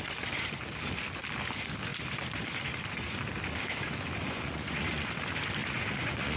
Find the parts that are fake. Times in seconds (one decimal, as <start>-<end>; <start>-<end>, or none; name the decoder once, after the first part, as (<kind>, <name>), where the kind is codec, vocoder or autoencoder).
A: 4.2-5.1 (vocoder, Vocos); 5.6-6.4